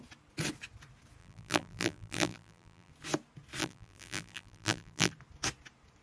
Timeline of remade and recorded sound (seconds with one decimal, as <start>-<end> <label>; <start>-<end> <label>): 0.0-1.2 recorded; 1.2-2.9 remade; 2.9-3.6 recorded; 3.6-5.1 remade; 5.1-6.0 recorded